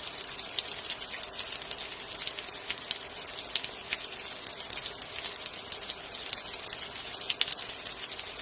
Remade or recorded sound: recorded